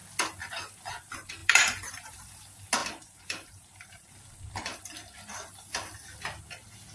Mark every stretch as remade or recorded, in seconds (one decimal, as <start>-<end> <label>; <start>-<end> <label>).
0.0-1.4 recorded; 1.4-2.2 remade; 2.2-2.8 recorded; 2.8-4.1 remade; 4.1-6.9 recorded